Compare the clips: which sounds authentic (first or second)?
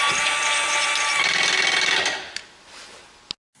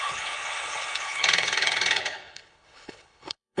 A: first